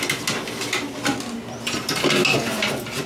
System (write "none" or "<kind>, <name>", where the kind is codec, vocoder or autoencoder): none